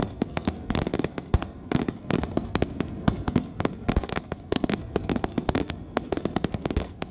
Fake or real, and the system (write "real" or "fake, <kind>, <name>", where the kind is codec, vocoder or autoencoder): fake, codec, SNAC